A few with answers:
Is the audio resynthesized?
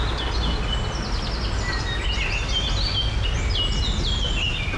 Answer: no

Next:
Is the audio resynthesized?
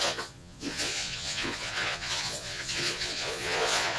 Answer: yes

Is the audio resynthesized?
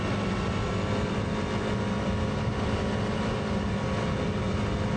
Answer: no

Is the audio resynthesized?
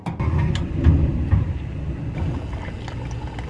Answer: no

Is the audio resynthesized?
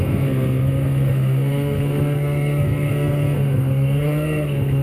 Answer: yes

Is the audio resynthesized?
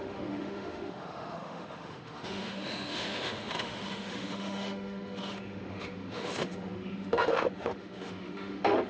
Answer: yes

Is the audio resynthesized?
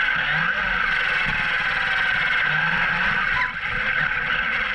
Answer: no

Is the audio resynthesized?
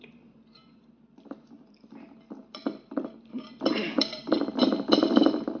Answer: yes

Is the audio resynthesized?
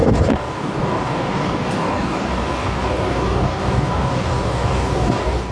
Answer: yes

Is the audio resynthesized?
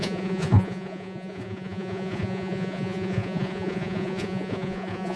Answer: yes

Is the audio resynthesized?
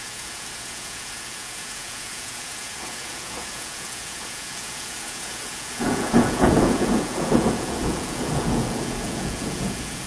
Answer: yes